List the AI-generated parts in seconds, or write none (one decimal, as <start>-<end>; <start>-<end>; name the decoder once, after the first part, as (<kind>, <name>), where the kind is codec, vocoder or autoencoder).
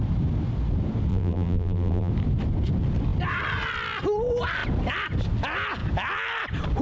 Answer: 1.1-2.1 (vocoder, BigVGAN v2)